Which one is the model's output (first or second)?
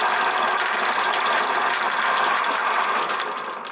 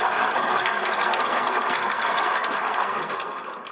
second